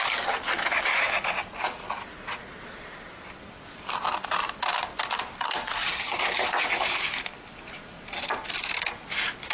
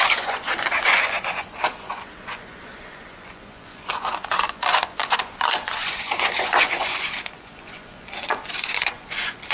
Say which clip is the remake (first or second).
second